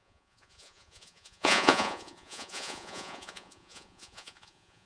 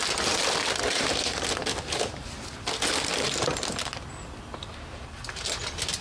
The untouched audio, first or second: second